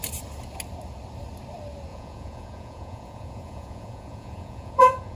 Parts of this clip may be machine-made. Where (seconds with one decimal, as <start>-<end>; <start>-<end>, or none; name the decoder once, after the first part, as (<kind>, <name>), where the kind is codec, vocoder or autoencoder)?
1.9-5.2 (vocoder, Vocos)